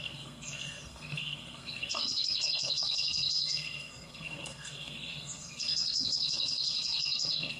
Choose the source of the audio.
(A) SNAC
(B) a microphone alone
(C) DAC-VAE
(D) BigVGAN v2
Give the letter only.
A